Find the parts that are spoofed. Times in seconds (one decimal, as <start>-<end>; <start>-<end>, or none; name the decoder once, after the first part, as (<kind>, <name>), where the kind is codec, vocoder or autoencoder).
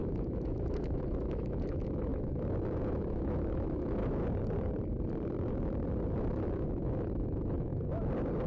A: 0.0-4.0 (autoencoder, DAC-VAE); 6.1-7.7